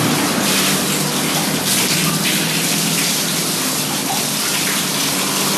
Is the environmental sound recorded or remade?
remade